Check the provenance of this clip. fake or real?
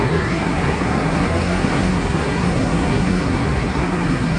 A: fake